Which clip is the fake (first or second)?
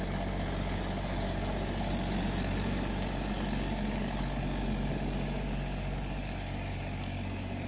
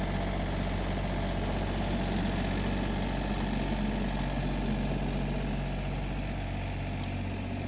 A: first